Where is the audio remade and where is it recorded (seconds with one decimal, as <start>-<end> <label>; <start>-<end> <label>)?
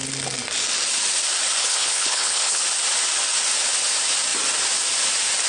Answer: 0.0-1.6 recorded; 1.6-2.6 remade; 2.6-5.5 recorded